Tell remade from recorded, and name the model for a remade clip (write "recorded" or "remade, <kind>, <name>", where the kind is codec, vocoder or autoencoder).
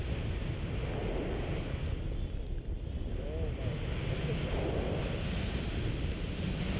recorded